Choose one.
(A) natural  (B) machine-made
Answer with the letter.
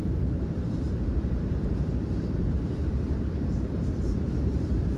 B